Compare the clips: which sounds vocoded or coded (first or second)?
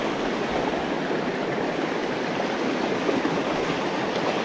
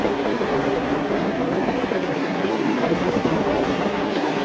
second